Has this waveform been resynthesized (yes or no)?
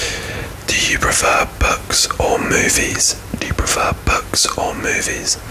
no